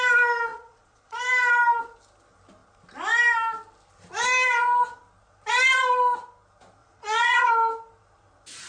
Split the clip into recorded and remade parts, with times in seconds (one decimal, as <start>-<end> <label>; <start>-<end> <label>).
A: 0.0-0.5 recorded; 0.5-1.2 remade; 1.2-6.8 recorded; 6.8-7.5 remade; 7.5-8.7 recorded